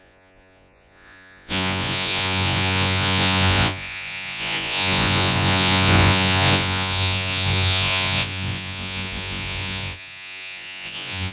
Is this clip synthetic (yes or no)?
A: yes